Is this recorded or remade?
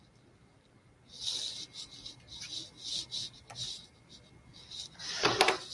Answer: recorded